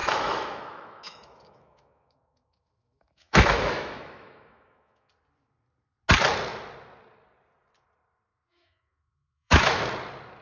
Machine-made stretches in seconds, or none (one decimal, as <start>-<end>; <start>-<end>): 0.0-5.1; 8.5-9.8

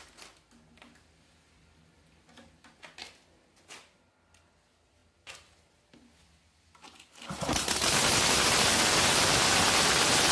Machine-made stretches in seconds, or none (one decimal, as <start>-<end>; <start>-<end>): none

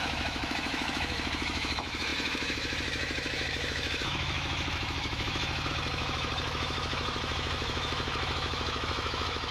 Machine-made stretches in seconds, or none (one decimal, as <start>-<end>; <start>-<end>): 0.0-9.5

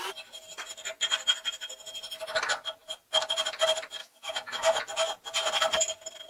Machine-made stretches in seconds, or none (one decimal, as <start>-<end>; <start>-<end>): 4.0-4.8

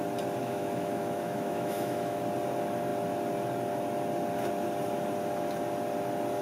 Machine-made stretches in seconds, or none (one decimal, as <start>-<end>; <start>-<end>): 0.4-2.2

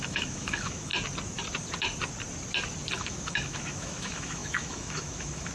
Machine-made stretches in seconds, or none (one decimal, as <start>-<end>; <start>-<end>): 0.0-0.9; 3.0-5.5